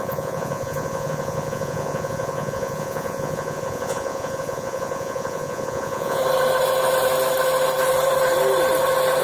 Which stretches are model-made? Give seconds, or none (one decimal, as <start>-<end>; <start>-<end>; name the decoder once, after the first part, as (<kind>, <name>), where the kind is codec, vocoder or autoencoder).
0.0-6.2 (vocoder, Vocos)